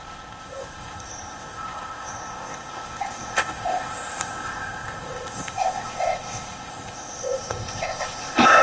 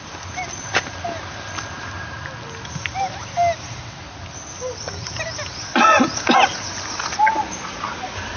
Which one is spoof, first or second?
first